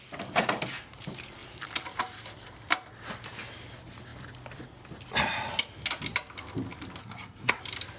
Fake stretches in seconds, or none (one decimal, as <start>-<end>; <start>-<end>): 7.0-7.6